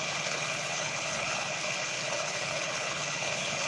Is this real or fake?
fake